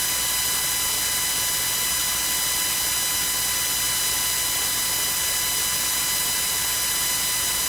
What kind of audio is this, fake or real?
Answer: real